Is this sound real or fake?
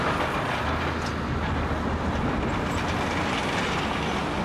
real